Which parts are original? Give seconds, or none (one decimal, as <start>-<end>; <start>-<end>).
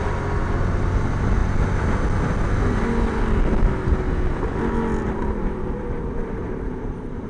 0.0-5.0